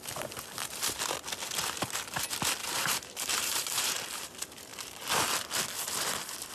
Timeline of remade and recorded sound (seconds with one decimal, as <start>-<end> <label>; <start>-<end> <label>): 0.0-2.6 recorded; 2.6-4.0 remade; 4.0-6.5 recorded